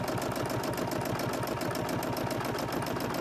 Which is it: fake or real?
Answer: real